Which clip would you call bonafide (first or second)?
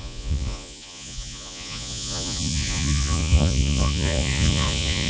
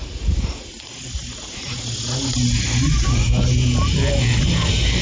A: second